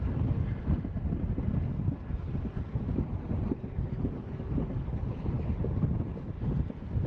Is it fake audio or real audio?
real